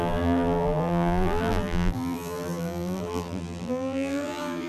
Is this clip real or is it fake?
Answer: fake